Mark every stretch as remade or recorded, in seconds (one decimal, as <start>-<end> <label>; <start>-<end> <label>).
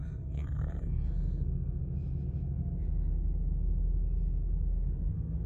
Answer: 0.0-1.8 remade; 1.8-5.1 recorded; 5.1-5.5 remade